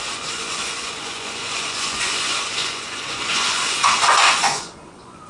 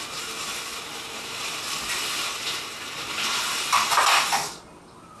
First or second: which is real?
second